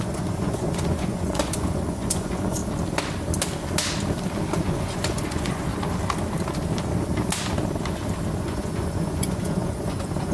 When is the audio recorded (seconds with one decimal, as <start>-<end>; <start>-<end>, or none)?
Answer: 2.6-4.6; 5.7-8.4